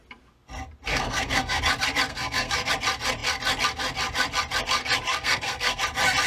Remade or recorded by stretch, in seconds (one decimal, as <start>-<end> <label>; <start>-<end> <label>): 0.0-0.9 recorded; 0.9-1.6 remade; 1.6-2.1 recorded; 2.1-2.7 remade; 2.7-5.1 recorded; 5.1-5.8 remade; 5.8-6.3 recorded